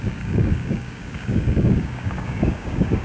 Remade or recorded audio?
remade